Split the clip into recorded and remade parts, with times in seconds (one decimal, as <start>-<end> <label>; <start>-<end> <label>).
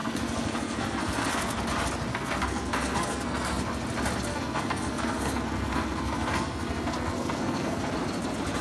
0.0-1.6 remade; 1.6-2.1 recorded; 2.1-3.6 remade; 3.6-4.3 recorded; 4.3-7.9 remade; 7.9-8.6 recorded